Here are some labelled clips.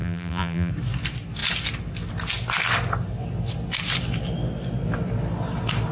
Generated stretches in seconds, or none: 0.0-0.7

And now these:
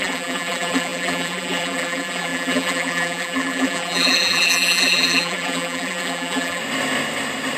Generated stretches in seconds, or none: 0.0-6.6

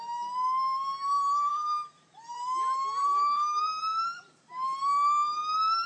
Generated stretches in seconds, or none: 1.5-4.3

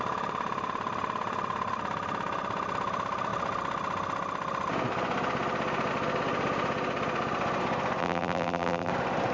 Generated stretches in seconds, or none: 8.0-8.9

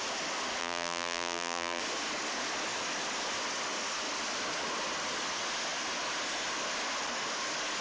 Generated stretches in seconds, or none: 0.6-1.8

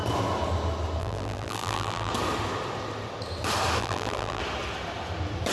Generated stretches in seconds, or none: 1.0-2.1; 3.8-4.4